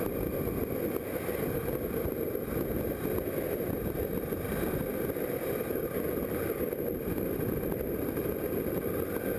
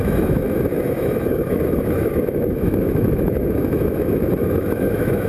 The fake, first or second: second